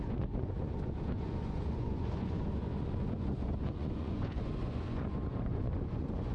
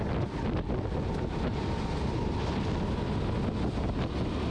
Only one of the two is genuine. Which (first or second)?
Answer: second